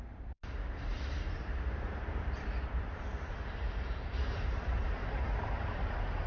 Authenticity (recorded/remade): remade